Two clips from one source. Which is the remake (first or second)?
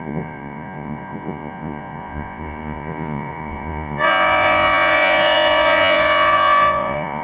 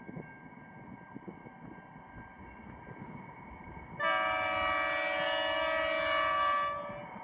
first